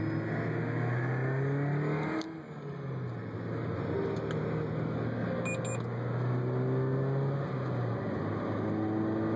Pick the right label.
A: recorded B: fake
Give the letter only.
A